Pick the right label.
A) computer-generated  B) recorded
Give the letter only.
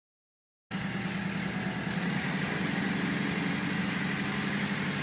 B